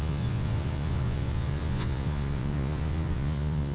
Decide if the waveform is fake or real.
fake